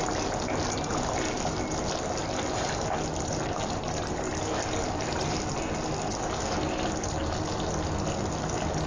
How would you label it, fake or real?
real